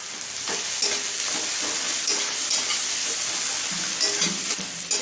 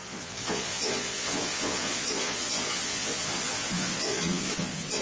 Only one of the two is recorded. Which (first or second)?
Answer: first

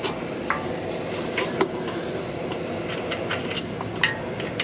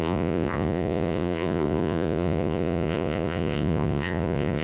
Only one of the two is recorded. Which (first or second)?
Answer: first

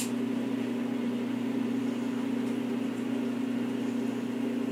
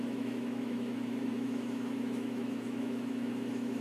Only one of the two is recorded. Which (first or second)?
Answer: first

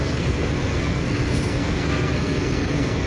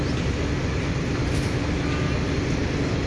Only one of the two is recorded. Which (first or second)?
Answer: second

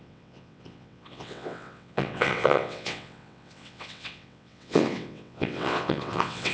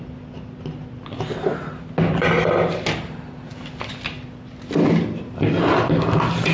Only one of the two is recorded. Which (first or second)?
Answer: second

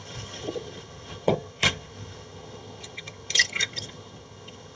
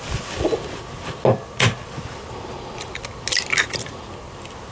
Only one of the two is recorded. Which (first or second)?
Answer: second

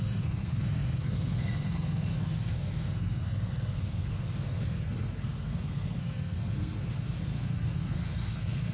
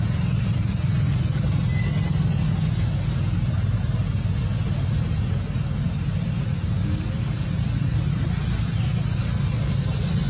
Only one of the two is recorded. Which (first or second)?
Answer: second